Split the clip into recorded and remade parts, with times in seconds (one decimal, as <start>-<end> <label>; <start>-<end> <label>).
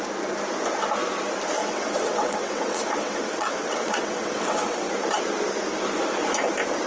0.0-1.6 recorded; 1.6-4.9 remade; 4.9-6.9 recorded